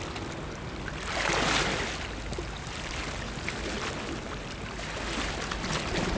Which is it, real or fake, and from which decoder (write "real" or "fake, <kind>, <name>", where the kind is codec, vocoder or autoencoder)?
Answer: real